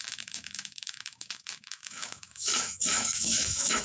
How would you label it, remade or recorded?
remade